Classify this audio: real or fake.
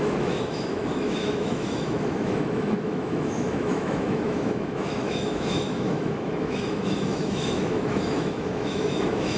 fake